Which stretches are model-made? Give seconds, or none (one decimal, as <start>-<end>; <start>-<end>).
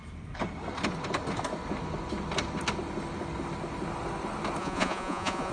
4.6-5.5